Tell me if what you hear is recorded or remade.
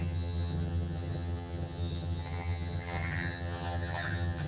remade